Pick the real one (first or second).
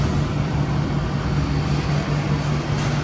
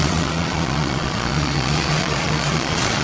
first